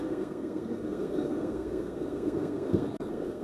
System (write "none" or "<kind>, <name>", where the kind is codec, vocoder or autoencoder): codec, SNAC